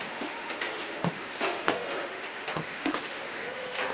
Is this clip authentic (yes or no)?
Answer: no